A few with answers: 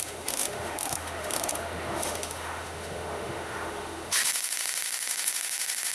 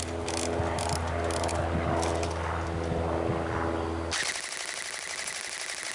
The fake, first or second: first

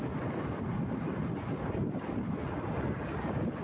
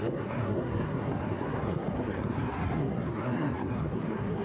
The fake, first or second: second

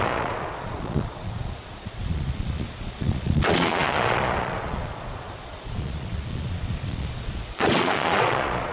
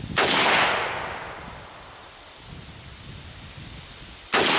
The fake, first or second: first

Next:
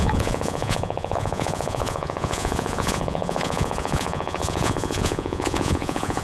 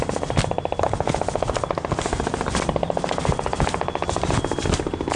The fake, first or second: first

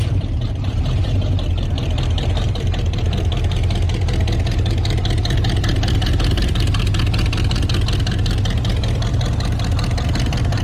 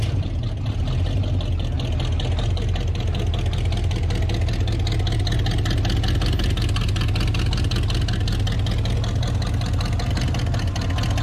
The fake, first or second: first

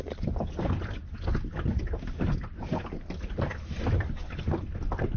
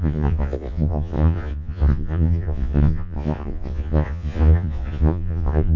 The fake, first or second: second